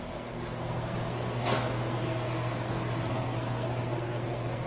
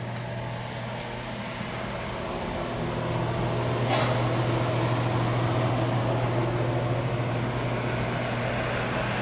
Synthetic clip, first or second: first